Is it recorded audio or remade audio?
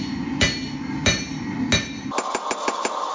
recorded